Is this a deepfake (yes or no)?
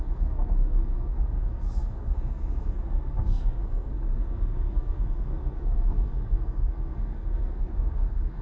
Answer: yes